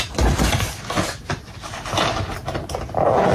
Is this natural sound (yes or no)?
yes